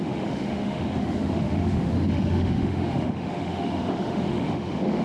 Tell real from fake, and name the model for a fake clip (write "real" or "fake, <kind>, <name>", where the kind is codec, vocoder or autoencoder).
fake, autoencoder, DAC-VAE